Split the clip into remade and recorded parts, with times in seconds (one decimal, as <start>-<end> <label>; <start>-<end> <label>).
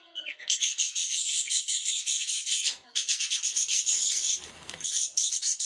0.0-5.7 remade